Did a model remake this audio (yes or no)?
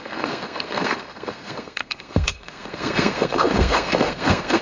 yes